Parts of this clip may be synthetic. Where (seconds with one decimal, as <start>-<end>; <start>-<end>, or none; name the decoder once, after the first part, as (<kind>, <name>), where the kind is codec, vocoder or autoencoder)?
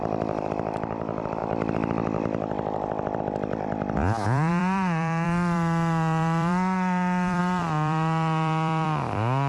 0.0-9.5 (vocoder, BigVGAN v2)